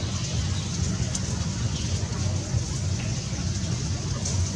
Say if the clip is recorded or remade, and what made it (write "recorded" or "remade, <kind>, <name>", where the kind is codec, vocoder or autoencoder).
remade, vocoder, Vocos